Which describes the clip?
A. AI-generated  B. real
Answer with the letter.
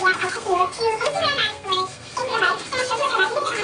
A